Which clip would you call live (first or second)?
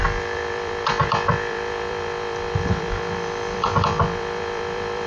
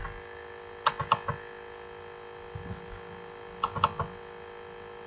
second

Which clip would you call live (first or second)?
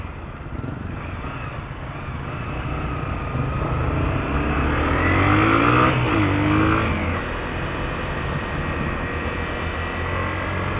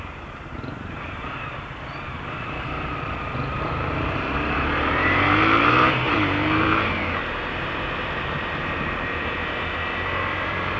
first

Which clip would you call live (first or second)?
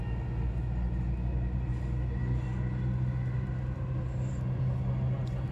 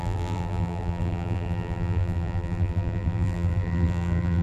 first